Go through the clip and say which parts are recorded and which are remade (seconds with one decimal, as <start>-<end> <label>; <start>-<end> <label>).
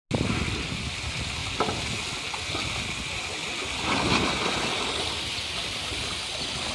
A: 0.0-6.7 recorded